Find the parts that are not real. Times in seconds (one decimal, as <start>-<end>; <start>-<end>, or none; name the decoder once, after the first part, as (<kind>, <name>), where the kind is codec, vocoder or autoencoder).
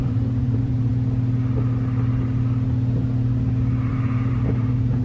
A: 0.0-0.9 (vocoder, BigVGAN v2); 3.9-5.0